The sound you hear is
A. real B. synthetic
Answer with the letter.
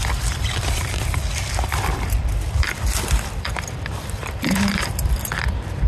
B